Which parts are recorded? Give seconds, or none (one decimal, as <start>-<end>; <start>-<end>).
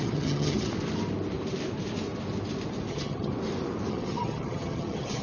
0.7-2.9; 3.3-3.9